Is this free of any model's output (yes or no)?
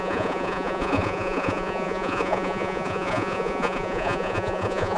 no